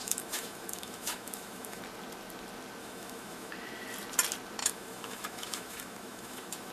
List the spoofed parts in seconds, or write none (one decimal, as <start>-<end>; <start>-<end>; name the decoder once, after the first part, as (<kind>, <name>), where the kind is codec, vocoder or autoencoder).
0.0-1.8 (autoencoder, DAC-VAE); 2.8-3.5; 4.6-6.7